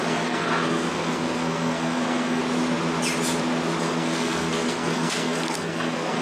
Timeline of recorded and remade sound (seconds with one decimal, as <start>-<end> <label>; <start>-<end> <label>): 0.0-2.4 remade; 2.4-3.8 recorded; 3.8-6.2 remade